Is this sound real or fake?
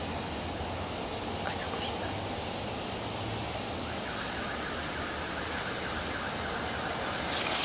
real